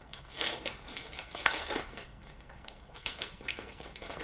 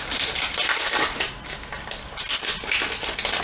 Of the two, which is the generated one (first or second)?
first